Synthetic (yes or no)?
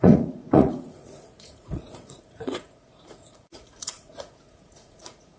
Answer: yes